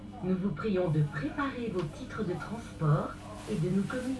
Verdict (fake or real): real